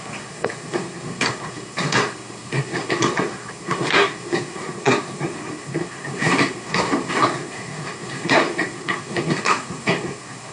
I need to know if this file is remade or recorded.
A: remade